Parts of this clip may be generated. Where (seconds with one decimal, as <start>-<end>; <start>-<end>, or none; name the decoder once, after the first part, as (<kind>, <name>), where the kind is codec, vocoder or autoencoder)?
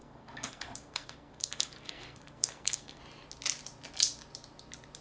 0.0-3.0 (codec, SNAC)